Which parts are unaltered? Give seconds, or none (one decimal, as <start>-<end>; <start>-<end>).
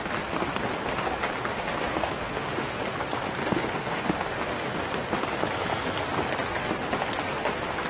0.0-1.5; 2.8-3.4; 4.7-7.9